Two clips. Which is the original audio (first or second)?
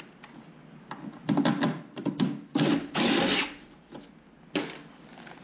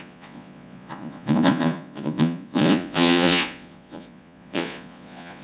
first